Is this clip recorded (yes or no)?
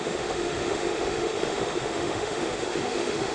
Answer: no